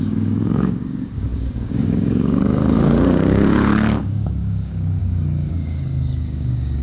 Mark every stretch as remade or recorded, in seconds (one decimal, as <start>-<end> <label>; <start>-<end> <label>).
0.0-6.8 remade